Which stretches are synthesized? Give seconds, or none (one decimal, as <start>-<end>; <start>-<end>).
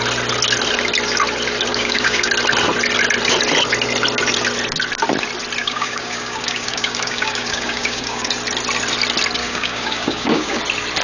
1.7-2.3; 5.6-8.3; 9.4-10.6